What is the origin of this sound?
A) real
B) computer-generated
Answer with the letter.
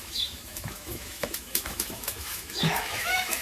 B